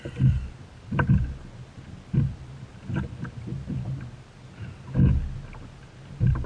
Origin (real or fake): real